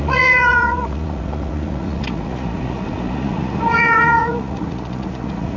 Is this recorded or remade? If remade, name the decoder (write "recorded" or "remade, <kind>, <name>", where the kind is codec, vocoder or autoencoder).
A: remade, vocoder, Vocos